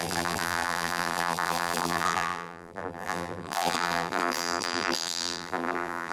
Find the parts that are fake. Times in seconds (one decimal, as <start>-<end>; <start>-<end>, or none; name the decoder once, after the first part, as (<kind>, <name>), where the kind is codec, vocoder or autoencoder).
0.0-6.1 (vocoder, BigVGAN v2)

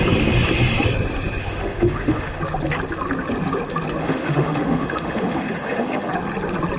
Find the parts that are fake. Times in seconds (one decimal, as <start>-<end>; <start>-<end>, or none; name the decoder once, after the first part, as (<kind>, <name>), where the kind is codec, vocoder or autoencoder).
1.4-2.4 (autoencoder, DAC-VAE); 4.0-6.1

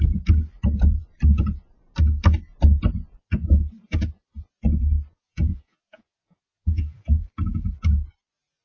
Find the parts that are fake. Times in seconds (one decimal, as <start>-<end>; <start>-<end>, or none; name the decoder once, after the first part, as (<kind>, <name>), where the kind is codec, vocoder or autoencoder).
5.1-7.1 (vocoder, Vocos)

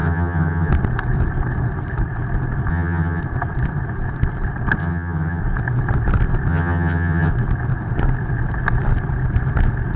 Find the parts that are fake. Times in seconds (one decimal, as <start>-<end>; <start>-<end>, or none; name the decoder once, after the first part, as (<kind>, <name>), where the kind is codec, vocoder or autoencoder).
0.0-0.7 (vocoder, HiFi-GAN); 2.7-3.2; 4.8-5.4; 6.5-7.3

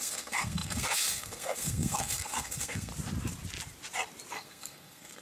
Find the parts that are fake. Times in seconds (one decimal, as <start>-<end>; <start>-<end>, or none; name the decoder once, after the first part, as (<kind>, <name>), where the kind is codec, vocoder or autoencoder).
0.0-2.9 (codec, SNAC); 4.3-5.2

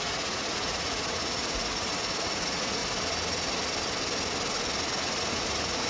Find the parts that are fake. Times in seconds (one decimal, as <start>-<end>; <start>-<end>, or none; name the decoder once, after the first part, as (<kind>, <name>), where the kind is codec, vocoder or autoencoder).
0.0-2.8 (vocoder, Vocos); 5.3-5.9